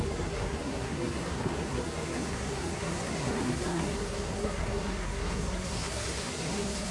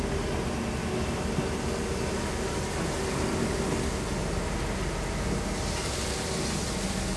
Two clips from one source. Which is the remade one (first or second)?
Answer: first